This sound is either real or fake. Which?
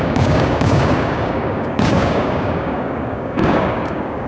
fake